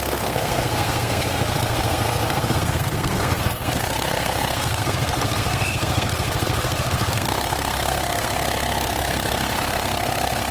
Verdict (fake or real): fake